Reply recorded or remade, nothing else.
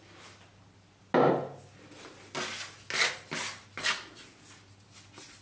recorded